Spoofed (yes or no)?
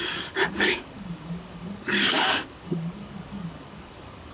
yes